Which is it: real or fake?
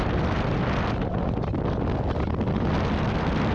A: real